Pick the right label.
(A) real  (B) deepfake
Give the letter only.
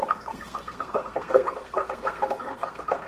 B